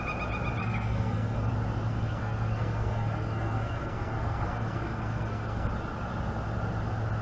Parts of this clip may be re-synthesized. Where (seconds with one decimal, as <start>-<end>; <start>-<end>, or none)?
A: 0.6-1.5; 1.9-5.7